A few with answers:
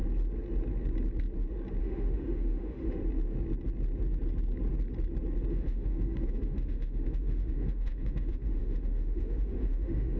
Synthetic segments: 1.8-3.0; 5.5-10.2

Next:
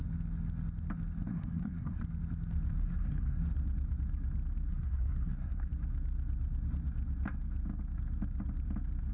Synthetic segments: 1.3-2.0; 2.8-3.4; 4.7-5.7

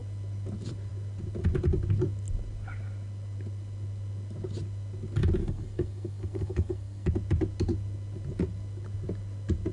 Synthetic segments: 5.4-7.1

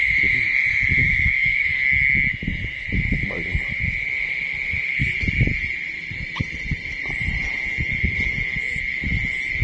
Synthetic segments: 1.0-1.7

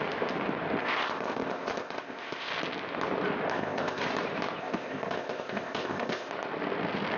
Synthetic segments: 0.8-2.5; 3.5-4.0; 4.6-6.3

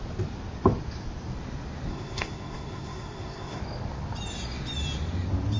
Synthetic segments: 1.9-3.6

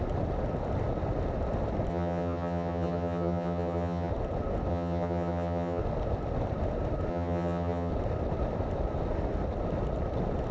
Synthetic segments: 1.9-4.1; 4.7-5.8; 7.1-7.9

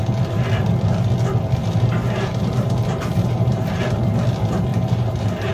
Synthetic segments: 1.6-3.8; 4.7-5.5